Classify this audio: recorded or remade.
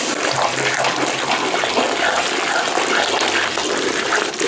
recorded